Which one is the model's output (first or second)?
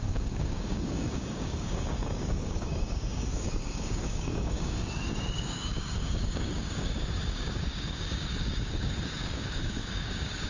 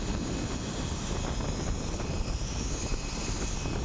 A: first